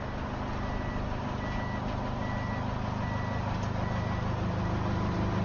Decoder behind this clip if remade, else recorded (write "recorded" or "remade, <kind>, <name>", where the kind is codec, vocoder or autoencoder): recorded